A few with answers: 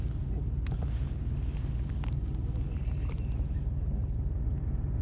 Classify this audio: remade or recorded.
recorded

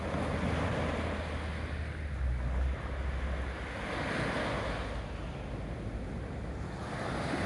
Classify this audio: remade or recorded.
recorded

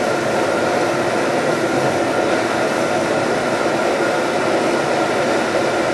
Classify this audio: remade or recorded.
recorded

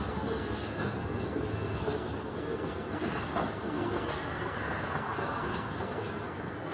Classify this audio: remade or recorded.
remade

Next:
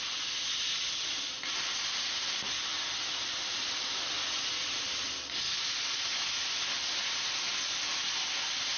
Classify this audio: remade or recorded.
recorded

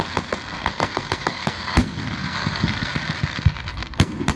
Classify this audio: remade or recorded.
remade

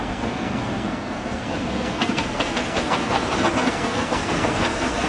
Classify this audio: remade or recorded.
remade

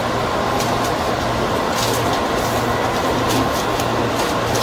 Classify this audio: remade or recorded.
recorded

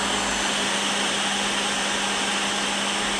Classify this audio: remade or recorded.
recorded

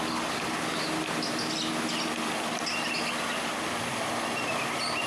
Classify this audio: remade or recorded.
recorded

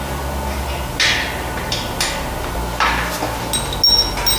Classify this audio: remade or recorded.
recorded